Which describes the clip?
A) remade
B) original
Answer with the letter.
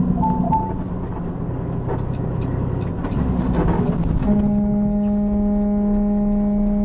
B